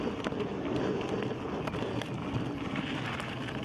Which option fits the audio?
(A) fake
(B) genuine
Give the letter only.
B